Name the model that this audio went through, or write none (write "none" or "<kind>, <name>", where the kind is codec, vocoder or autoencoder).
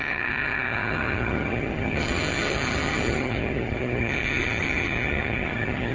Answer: vocoder, HiFi-GAN